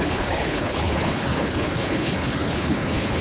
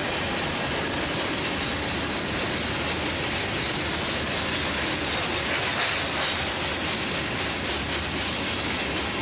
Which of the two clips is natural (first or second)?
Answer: second